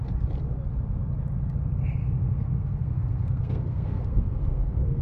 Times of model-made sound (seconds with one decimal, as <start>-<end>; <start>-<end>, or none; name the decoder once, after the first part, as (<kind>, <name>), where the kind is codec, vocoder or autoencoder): 2.0-5.0 (codec, SNAC)